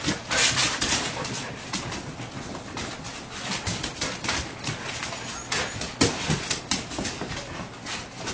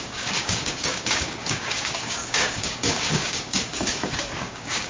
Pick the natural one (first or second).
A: first